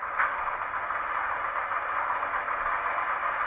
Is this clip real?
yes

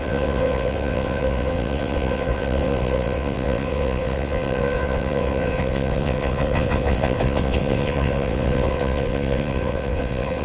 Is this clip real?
no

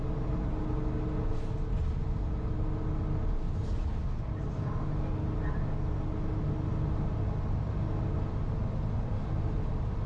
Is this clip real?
yes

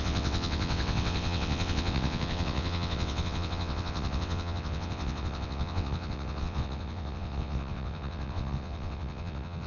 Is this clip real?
no